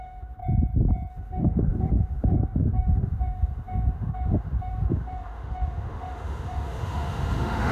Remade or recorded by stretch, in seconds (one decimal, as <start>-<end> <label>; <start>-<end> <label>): 0.0-0.4 remade; 0.4-1.1 recorded; 1.1-7.7 remade